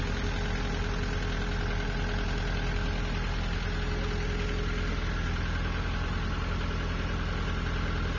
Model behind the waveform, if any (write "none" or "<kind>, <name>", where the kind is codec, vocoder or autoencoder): none